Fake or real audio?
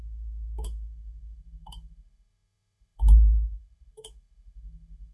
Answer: fake